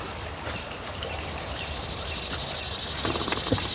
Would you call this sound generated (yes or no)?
no